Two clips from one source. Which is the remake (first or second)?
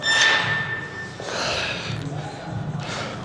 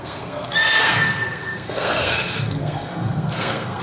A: second